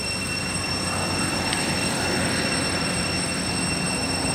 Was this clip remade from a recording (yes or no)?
no